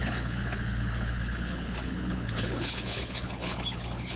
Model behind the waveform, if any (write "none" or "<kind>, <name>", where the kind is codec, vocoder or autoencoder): codec, HILCodec